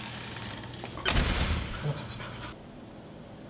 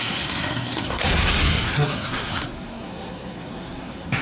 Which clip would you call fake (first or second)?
second